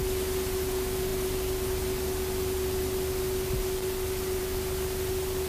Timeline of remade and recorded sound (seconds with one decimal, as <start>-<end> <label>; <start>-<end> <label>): 0.0-5.5 recorded